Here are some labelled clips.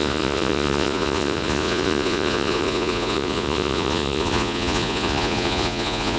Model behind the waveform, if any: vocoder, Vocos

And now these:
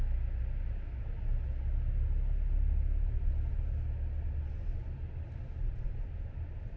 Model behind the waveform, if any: none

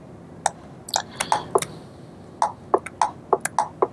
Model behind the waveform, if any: none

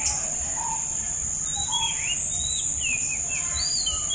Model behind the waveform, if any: none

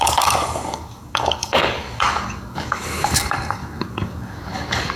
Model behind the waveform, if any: codec, DAC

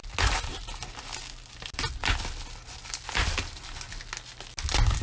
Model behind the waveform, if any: none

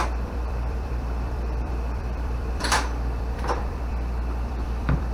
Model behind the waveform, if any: vocoder, BigVGAN v2